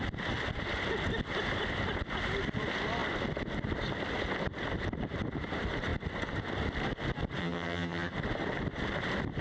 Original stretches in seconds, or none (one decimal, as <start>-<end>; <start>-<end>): 0.0-7.4; 8.1-9.4